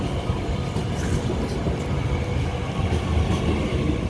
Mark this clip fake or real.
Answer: real